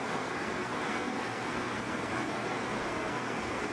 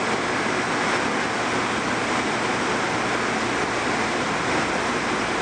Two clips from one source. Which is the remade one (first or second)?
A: first